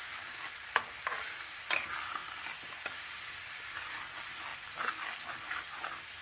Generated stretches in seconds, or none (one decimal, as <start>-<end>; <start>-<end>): none